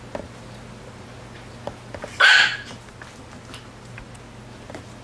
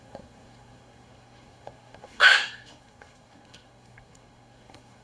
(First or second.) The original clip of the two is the first